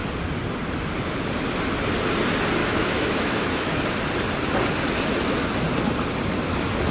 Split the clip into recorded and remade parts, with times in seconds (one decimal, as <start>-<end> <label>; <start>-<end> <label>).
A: 0.0-2.6 recorded; 2.6-3.8 remade; 3.8-6.9 recorded